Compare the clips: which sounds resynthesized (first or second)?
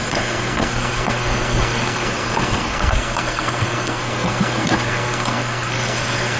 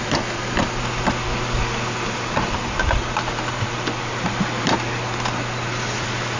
first